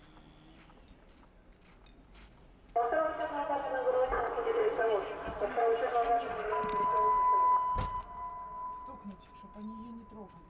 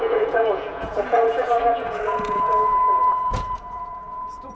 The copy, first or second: second